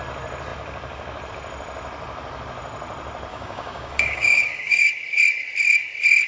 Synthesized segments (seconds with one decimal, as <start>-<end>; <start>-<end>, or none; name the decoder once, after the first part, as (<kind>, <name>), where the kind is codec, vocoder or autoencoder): 3.3-4.9 (codec, DAC)

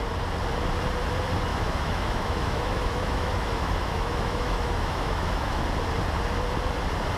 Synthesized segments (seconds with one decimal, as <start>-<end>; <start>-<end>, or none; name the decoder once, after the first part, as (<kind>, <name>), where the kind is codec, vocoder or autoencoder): 1.5-5.6 (autoencoder, DAC-VAE)

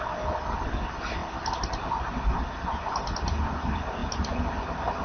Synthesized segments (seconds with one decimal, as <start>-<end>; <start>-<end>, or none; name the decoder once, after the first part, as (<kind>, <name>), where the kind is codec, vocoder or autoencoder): none